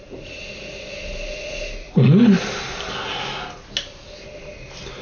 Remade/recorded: recorded